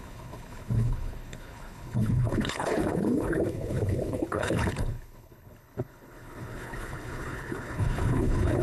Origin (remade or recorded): remade